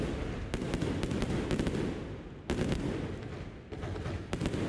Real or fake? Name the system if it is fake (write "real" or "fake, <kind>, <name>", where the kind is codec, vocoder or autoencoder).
real